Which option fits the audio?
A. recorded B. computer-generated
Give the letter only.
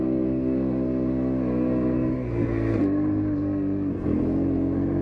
B